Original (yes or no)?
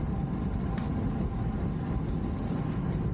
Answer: yes